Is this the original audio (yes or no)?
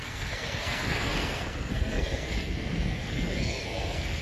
no